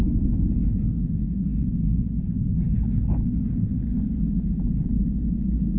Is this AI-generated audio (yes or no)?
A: no